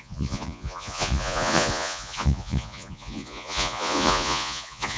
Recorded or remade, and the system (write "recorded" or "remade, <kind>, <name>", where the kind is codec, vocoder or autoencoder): remade, vocoder, Vocos